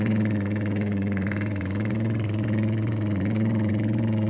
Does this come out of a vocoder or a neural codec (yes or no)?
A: yes